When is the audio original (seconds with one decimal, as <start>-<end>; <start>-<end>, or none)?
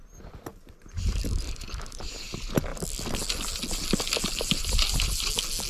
0.0-0.5; 1.2-2.7; 5.3-5.7